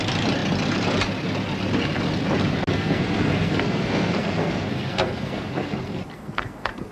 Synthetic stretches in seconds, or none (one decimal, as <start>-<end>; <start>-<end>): 2.7-6.9